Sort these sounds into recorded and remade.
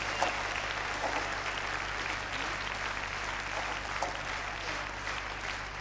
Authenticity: recorded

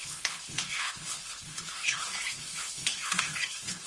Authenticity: remade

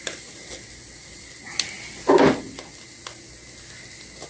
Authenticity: recorded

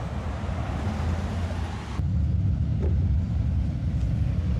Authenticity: recorded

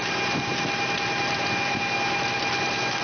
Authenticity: recorded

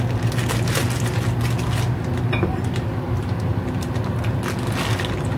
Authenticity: recorded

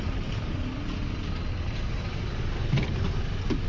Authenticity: recorded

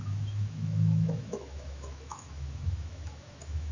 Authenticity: remade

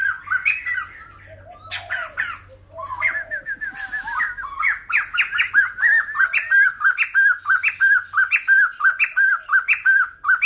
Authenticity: recorded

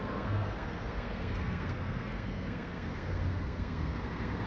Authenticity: remade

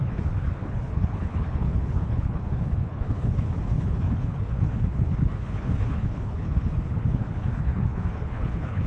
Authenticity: remade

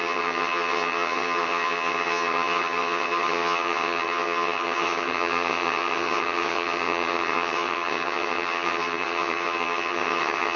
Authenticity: remade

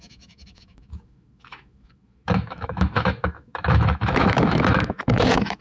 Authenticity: remade